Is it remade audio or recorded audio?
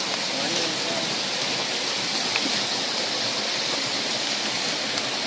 recorded